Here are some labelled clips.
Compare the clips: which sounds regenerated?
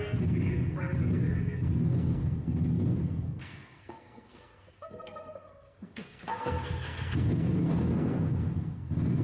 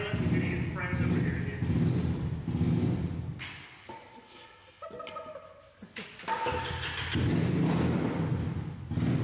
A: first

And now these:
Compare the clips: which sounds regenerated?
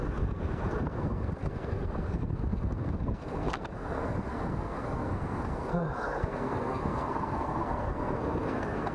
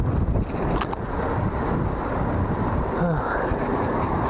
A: first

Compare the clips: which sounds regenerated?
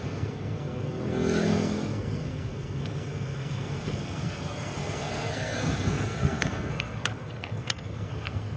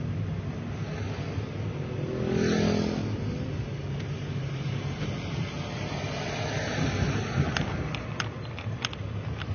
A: first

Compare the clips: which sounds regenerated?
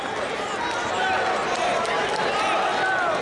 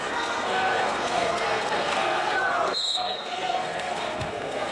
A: second